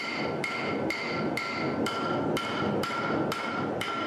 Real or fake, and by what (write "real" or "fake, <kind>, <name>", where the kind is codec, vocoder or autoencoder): real